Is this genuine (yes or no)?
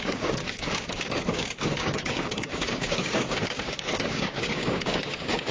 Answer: no